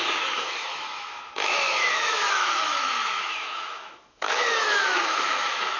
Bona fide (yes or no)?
no